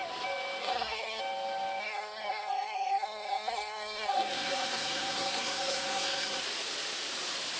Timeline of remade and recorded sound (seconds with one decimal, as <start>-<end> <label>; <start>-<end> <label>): 0.0-0.6 recorded; 0.6-1.2 remade; 1.2-1.8 recorded; 1.8-6.4 remade; 6.4-7.6 recorded